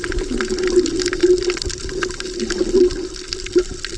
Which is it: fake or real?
real